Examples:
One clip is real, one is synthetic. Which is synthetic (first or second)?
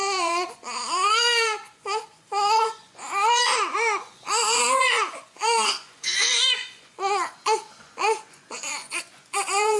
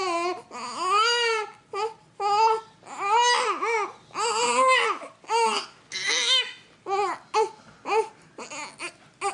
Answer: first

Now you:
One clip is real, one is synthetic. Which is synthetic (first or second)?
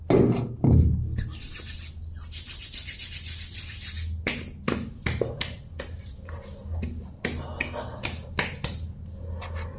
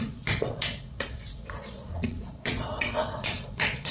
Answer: second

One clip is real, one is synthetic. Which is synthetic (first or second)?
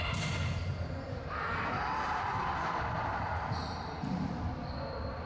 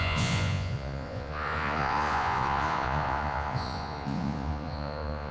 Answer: second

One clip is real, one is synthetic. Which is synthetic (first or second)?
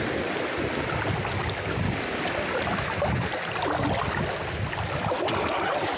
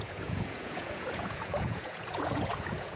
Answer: second